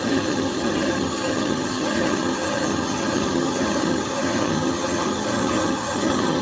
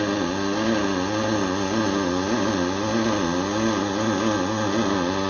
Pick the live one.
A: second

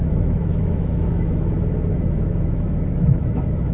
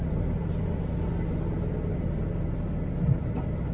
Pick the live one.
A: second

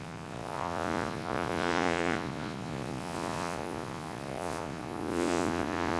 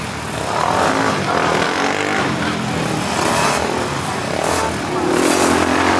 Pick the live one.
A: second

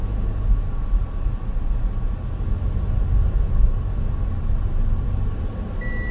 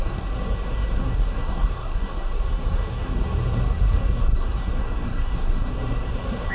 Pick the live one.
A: first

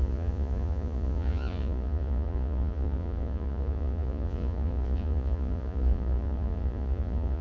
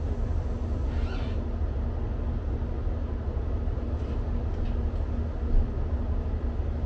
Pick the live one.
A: second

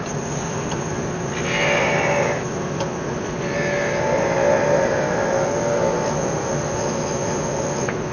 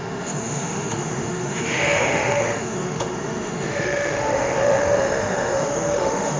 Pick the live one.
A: first